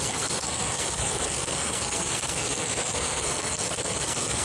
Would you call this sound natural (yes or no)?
no